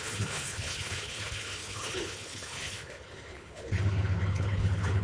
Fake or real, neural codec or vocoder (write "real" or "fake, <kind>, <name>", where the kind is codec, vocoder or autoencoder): fake, codec, HILCodec